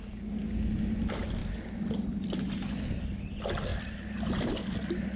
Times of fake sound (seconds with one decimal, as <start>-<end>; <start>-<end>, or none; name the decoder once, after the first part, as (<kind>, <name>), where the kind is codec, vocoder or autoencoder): none